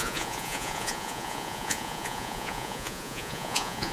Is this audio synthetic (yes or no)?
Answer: yes